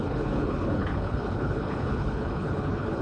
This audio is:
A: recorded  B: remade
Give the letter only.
B